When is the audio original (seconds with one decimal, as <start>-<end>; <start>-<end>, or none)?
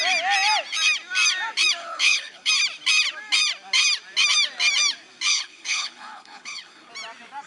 0.0-1.8; 2.5-5.3; 6.9-7.5